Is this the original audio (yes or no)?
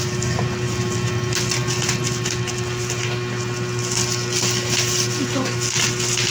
yes